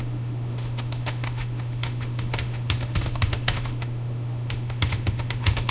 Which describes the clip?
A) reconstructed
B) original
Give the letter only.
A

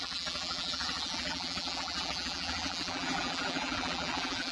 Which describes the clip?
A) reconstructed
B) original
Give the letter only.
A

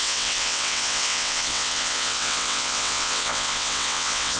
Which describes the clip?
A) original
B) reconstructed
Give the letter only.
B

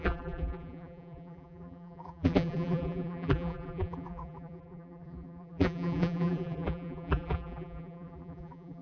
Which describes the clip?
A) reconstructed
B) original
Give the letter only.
A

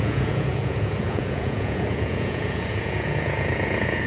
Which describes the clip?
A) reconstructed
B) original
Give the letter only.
A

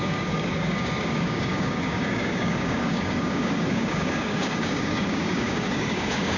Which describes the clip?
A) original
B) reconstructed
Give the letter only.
B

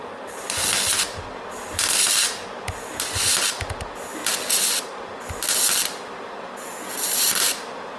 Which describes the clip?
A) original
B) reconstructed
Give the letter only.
A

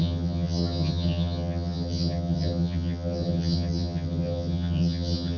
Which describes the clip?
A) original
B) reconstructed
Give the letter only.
B